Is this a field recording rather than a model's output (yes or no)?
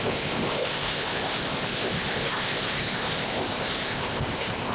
no